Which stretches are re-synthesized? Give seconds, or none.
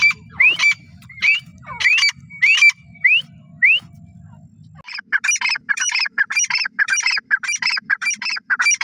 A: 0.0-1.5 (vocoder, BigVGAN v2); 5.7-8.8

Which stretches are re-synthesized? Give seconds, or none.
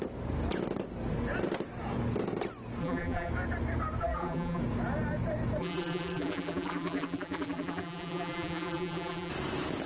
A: 2.8-3.3 (vocoder, BigVGAN v2); 4.0-4.6; 5.6-9.3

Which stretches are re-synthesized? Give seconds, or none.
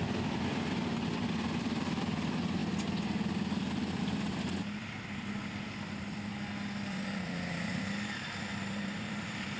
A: 0.0-2.6 (vocoder, BigVGAN v2); 4.0-9.6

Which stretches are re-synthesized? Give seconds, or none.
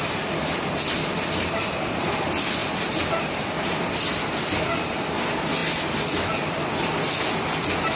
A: 2.6-4.2 (vocoder, BigVGAN v2); 5.6-6.3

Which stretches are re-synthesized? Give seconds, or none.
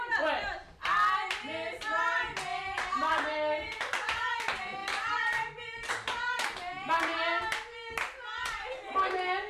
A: 2.5-3.1 (vocoder, BigVGAN v2); 4.8-5.9